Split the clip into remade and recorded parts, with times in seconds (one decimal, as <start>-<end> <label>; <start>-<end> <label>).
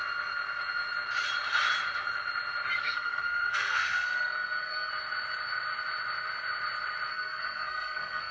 0.0-2.8 recorded; 2.8-4.9 remade; 4.9-7.1 recorded; 7.1-8.3 remade